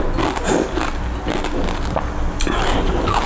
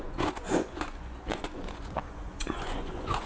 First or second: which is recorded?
first